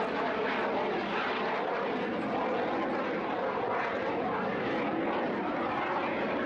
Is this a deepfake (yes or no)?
no